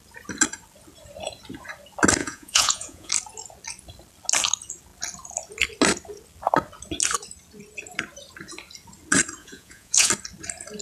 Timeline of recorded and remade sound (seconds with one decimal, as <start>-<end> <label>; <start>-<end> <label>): 0.0-2.2 recorded; 2.2-3.1 remade; 3.1-9.4 recorded; 9.4-10.1 remade; 10.1-10.8 recorded